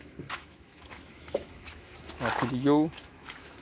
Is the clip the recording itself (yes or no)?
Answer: no